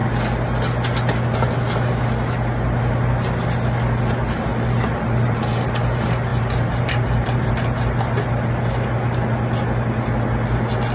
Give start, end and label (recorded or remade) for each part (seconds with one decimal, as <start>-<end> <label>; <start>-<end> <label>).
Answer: 0.0-4.5 recorded; 4.5-5.7 remade; 5.7-6.3 recorded; 6.3-7.5 remade; 7.5-10.9 recorded